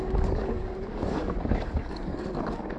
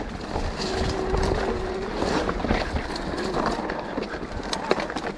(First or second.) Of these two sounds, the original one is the second